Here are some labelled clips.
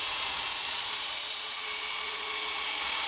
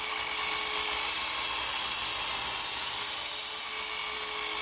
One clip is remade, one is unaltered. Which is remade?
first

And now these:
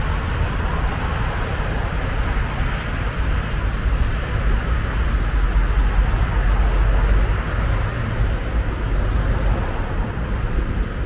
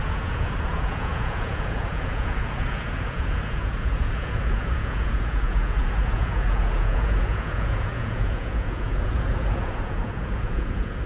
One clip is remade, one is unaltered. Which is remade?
second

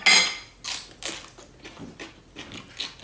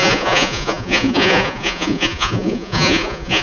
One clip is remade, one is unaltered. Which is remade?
second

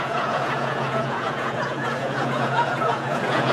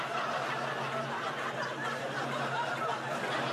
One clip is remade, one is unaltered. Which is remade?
first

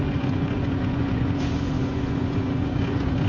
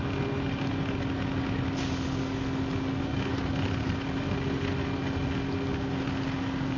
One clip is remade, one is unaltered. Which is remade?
first